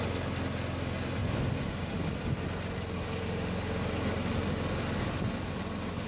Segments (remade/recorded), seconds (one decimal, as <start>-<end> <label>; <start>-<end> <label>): 0.0-6.1 recorded

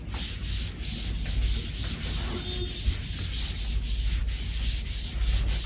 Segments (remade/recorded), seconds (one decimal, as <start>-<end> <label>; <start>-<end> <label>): 0.0-5.7 recorded

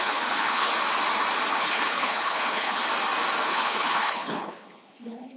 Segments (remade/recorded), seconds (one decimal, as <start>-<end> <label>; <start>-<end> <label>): 0.0-0.7 remade; 0.7-1.5 recorded; 1.5-2.8 remade; 2.8-3.4 recorded; 3.4-5.4 remade

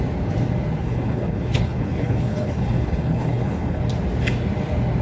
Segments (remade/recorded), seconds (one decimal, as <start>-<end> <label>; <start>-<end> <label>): 0.0-0.8 recorded; 0.8-3.8 remade; 3.8-5.0 recorded